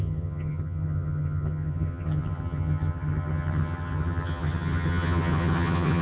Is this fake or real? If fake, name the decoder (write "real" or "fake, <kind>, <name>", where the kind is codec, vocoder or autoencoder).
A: fake, vocoder, HiFi-GAN